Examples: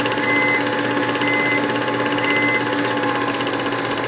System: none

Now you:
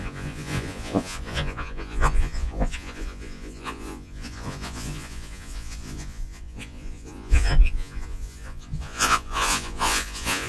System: vocoder, Vocos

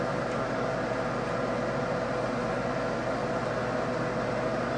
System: none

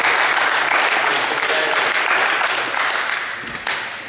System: none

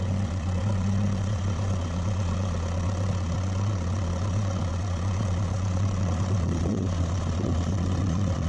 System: vocoder, Vocos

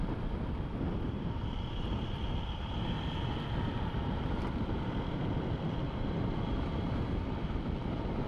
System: none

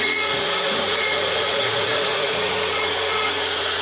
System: vocoder, Vocos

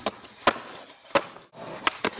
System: none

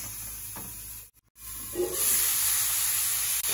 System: none